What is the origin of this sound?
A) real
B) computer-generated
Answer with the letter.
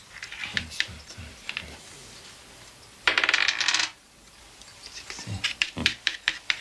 B